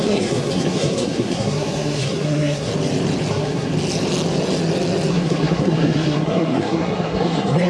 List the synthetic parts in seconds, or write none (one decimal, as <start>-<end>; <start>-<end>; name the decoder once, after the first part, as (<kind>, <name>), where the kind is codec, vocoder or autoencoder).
0.0-2.7 (codec, SNAC); 3.3-3.7; 5.1-7.7